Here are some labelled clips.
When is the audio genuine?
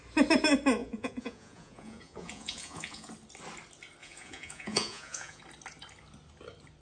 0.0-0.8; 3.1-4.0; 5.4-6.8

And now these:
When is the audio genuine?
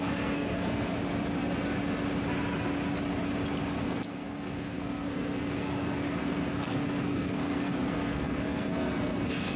0.9-3.8